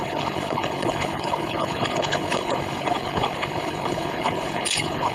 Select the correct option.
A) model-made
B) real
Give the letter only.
A